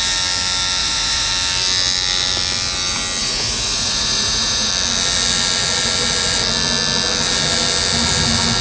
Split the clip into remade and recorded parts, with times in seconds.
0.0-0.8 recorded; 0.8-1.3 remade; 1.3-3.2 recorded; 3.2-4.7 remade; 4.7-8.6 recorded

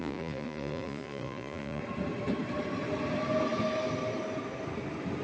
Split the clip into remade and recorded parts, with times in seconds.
0.0-1.8 remade; 1.8-5.2 recorded

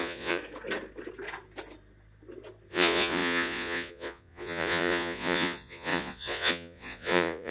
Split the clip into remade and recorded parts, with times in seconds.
0.0-0.4 remade; 0.4-2.7 recorded; 2.7-7.5 remade